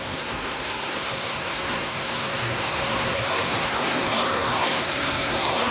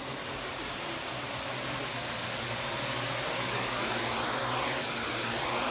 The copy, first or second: first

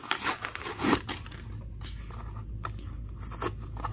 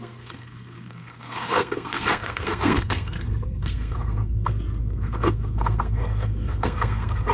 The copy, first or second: second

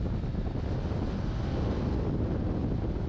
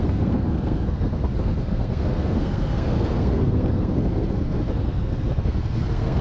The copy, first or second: second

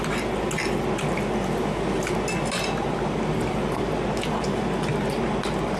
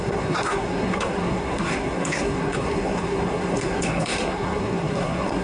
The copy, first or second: second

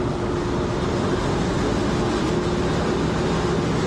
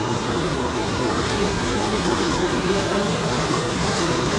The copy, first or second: second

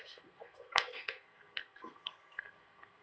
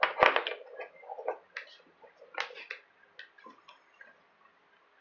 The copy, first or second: first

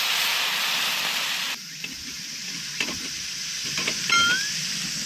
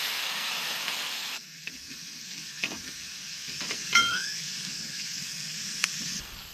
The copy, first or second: second